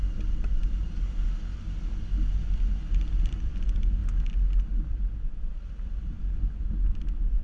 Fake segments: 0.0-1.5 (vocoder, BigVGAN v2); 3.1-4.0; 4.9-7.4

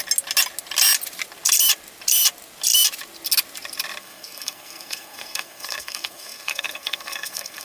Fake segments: 4.0-7.6 (codec, SNAC)

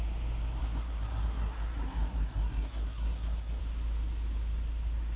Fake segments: 0.6-3.6 (codec, SNAC)

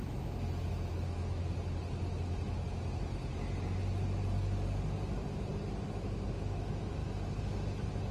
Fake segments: 0.0-1.4 (autoencoder, DAC-VAE); 5.9-7.0

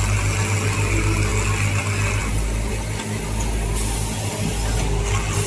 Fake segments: none

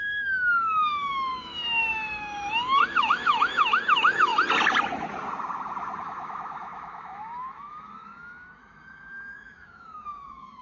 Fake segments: 0.0-4.3 (autoencoder, DAC-VAE); 6.0-10.6